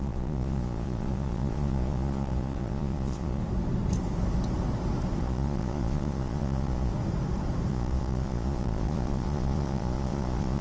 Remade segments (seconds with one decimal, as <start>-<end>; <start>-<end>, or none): 0.0-3.4; 5.2-6.9; 7.7-10.6